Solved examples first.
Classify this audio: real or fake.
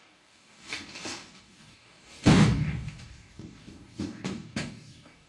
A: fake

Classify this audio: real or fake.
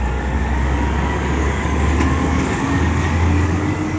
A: fake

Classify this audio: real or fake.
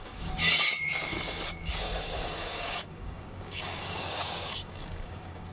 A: fake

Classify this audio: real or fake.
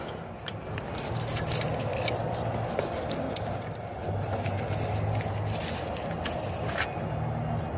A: real